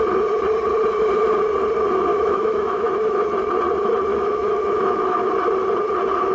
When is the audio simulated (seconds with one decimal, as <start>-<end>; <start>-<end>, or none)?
2.1-3.2; 4.1-5.3